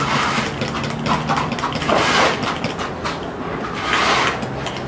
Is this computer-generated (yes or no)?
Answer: no